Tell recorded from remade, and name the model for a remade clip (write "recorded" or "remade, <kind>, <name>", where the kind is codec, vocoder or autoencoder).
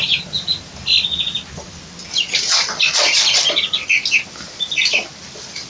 recorded